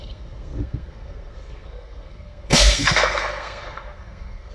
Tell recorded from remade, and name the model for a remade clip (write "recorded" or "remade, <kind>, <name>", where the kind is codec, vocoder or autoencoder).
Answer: remade, codec, SNAC